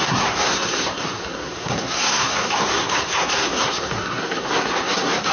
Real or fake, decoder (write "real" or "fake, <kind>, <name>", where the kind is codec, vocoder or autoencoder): fake, codec, SNAC